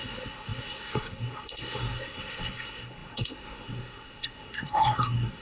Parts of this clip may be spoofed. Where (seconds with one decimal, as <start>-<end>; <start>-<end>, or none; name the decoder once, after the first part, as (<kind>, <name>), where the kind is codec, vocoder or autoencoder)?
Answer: 0.0-5.4 (codec, SNAC)